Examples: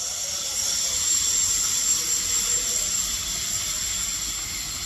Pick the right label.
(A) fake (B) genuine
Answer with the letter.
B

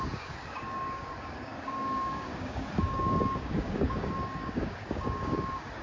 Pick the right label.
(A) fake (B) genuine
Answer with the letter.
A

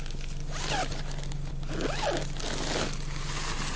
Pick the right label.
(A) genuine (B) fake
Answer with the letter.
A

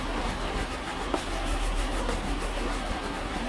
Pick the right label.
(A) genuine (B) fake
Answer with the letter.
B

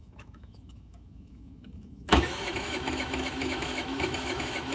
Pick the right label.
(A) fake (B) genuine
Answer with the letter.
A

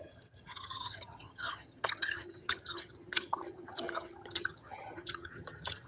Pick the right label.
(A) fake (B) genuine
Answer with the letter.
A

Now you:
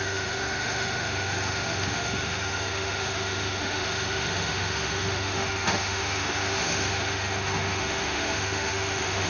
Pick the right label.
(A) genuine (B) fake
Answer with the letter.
B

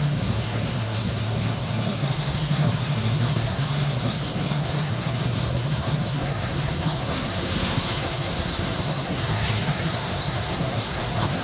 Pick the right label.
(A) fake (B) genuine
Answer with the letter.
A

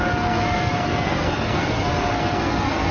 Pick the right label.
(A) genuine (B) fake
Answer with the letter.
B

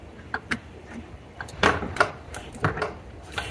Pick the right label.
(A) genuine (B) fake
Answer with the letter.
B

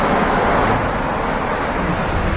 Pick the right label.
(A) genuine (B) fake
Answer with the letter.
A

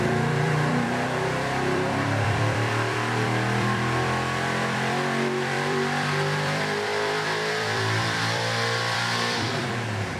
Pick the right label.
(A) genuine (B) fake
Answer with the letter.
B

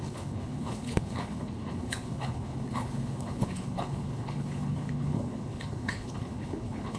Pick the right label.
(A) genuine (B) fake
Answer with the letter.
B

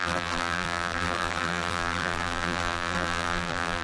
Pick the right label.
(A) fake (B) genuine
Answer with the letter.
A